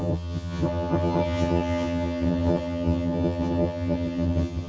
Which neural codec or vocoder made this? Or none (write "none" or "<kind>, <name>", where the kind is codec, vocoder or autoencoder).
vocoder, HiFi-GAN